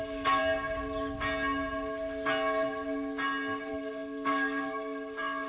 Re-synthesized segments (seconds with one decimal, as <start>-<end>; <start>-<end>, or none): 0.0-0.4; 3.7-5.5